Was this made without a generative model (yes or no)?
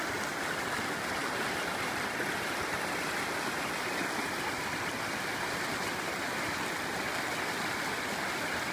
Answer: yes